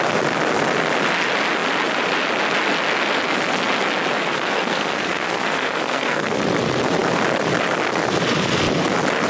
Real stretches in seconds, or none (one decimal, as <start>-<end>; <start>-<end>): 0.0-4.2; 6.4-9.3